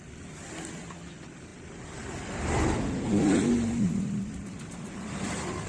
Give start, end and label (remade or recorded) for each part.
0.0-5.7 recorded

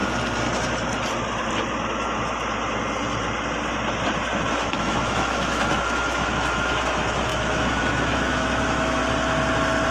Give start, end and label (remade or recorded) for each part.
0.0-4.5 recorded; 4.5-9.0 remade; 9.0-9.9 recorded

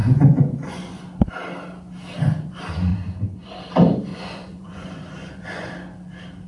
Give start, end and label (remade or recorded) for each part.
0.0-1.0 remade; 1.0-2.9 recorded; 2.9-3.6 remade; 3.6-4.1 recorded; 4.1-5.7 remade; 5.7-6.5 recorded

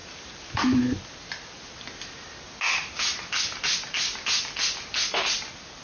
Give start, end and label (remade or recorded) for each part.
0.0-0.8 remade; 0.8-5.8 recorded

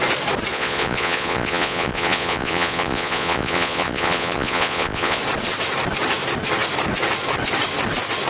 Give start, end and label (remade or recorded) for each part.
0.0-0.5 recorded; 0.5-5.2 remade; 5.2-8.3 recorded

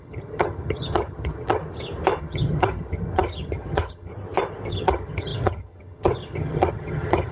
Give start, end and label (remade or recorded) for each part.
0.0-1.6 remade; 1.6-2.2 recorded; 2.2-4.1 remade; 4.1-4.7 recorded; 4.7-7.3 remade

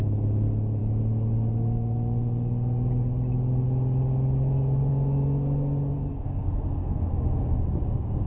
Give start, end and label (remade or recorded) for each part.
0.0-6.1 recorded; 6.1-7.1 remade; 7.1-8.3 recorded